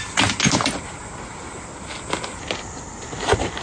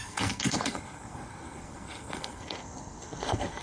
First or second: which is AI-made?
second